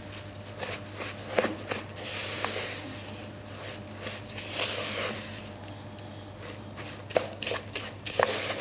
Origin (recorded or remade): recorded